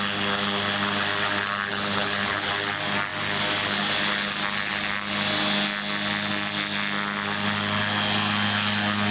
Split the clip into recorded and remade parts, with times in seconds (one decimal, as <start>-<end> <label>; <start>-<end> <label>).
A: 0.0-1.7 recorded; 1.7-2.5 remade; 2.5-9.1 recorded